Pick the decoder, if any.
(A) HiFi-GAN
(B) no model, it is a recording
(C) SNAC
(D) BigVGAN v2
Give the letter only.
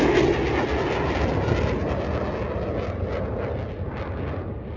B